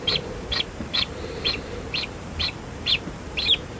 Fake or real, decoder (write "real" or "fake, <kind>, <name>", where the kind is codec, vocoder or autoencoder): fake, vocoder, BigVGAN v2